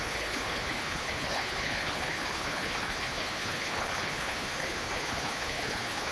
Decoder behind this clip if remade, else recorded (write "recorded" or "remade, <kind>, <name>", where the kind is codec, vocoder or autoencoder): remade, codec, HILCodec